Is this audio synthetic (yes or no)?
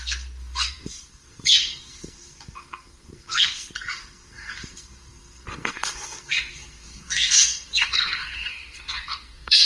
yes